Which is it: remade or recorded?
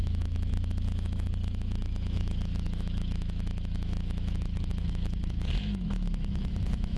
remade